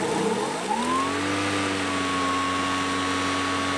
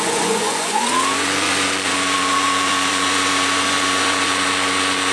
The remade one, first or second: second